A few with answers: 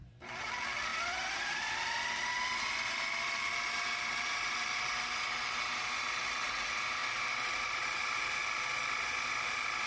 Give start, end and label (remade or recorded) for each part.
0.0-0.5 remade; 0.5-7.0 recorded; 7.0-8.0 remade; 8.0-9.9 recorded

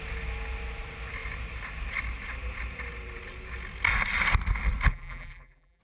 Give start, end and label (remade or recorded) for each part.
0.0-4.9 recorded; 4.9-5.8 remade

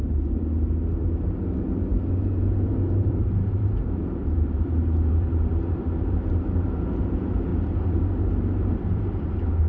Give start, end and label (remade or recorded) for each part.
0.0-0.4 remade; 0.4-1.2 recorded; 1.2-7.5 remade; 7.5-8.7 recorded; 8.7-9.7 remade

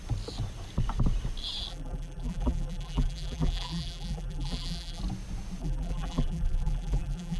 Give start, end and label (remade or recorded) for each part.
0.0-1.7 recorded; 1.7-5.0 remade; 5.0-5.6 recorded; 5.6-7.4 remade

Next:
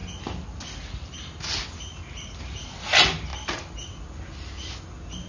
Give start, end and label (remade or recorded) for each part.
0.0-3.3 recorded; 3.3-4.0 remade; 4.0-5.3 recorded

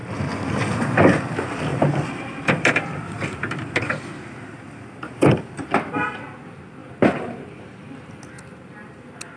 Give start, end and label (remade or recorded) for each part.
0.0-1.2 remade; 1.2-1.7 recorded; 1.7-3.9 remade; 3.9-6.8 recorded; 6.8-8.2 remade; 8.2-9.4 recorded

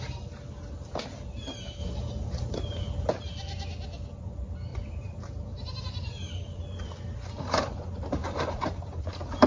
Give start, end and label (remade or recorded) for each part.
0.0-4.7 recorded; 4.7-6.3 remade; 6.3-8.2 recorded; 8.2-9.1 remade; 9.1-9.5 recorded